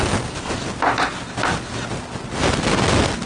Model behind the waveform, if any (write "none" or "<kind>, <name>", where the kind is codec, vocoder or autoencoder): none